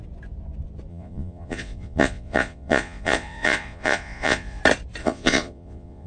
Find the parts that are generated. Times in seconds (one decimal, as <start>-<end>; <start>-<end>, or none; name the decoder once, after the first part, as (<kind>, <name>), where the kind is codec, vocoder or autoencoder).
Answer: 0.9-4.6 (vocoder, Vocos); 5.0-6.1